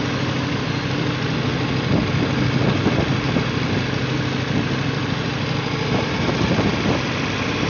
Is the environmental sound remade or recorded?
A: recorded